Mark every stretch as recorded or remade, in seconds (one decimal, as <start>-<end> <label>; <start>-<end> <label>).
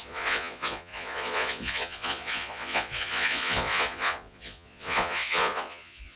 0.0-6.2 remade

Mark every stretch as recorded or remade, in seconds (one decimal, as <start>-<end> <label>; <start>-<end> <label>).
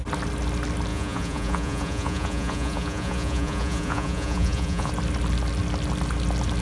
0.0-0.9 recorded; 0.9-4.9 remade; 4.9-6.6 recorded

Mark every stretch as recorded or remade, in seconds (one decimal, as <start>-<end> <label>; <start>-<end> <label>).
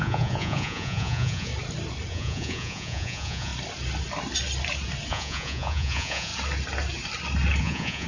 0.0-1.5 remade; 1.5-2.1 recorded; 2.1-3.5 remade; 3.5-5.1 recorded; 5.1-6.3 remade; 6.3-7.6 recorded; 7.6-8.1 remade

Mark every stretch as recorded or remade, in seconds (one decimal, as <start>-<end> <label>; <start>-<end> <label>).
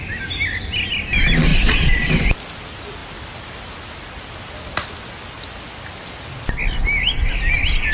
0.0-1.5 recorded; 1.5-2.1 remade; 2.1-7.9 recorded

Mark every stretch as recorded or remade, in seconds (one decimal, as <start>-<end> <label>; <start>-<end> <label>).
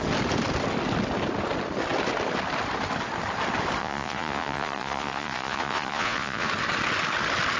0.0-3.8 recorded; 3.8-6.5 remade; 6.5-7.6 recorded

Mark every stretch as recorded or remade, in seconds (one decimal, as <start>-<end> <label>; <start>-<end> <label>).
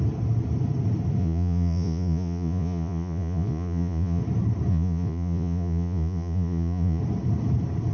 0.0-1.2 recorded; 1.2-4.2 remade; 4.2-4.7 recorded; 4.7-7.0 remade; 7.0-7.9 recorded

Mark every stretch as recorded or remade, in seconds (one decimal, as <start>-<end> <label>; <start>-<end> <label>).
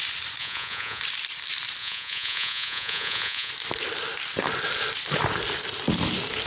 0.0-0.4 recorded; 0.4-1.0 remade; 1.0-1.8 recorded; 1.8-3.5 remade; 3.5-6.5 recorded